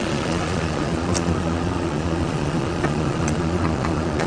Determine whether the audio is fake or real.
fake